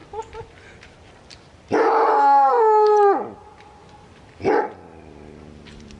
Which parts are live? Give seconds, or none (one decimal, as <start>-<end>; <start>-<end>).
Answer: 2.5-3.8; 4.5-6.0